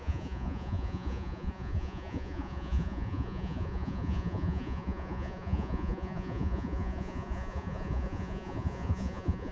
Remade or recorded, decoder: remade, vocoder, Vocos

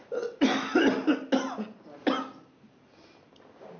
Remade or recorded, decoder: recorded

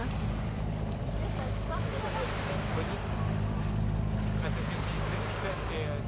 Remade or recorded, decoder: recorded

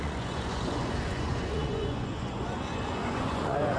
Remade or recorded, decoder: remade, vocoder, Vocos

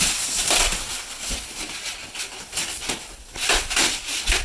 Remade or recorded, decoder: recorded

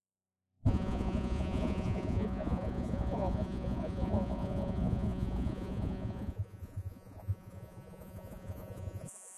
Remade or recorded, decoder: remade, vocoder, Vocos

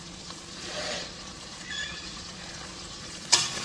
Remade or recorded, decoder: remade, vocoder, Vocos